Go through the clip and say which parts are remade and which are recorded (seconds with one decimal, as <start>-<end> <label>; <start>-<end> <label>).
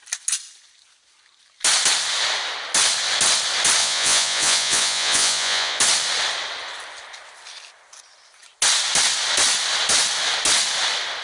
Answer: 0.0-3.8 recorded; 3.8-5.8 remade; 5.8-11.2 recorded